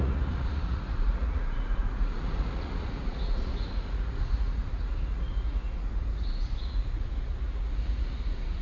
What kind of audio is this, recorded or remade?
remade